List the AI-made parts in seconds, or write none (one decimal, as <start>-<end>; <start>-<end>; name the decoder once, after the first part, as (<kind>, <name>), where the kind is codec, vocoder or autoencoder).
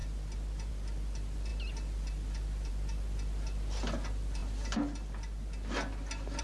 none